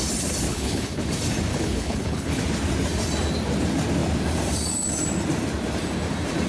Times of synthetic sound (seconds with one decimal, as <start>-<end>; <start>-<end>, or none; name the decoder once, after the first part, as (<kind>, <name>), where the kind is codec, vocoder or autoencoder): 0.5-1.0 (codec, HILCodec); 1.5-2.4